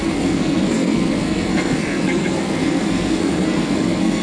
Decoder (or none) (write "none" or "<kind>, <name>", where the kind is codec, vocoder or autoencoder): codec, SNAC